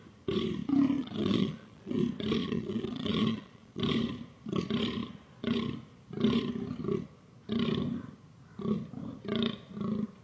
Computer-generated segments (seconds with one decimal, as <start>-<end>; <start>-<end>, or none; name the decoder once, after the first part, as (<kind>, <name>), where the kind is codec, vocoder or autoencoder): 1.0-2.0 (vocoder, Vocos); 2.4-3.8